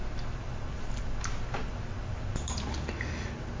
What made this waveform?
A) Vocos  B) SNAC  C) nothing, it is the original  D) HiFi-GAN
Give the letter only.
C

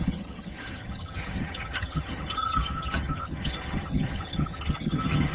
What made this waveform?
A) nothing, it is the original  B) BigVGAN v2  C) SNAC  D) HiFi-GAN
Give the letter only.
D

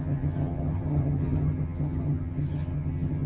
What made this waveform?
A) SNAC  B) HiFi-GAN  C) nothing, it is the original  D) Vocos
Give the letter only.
B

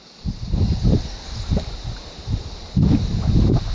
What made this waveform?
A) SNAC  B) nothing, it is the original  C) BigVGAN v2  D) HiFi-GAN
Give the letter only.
B